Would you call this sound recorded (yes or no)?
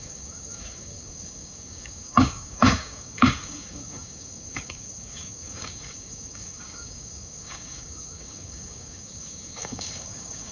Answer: no